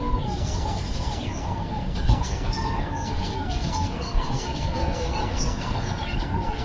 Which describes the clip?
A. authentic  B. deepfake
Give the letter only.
B